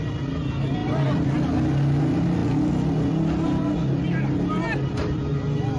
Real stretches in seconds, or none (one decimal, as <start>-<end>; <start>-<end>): 0.0-5.8